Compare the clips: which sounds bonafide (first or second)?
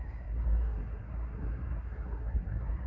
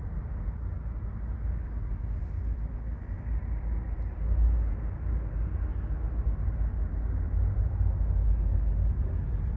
second